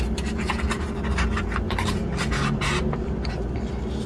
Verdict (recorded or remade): recorded